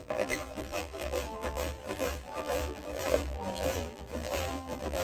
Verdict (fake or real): fake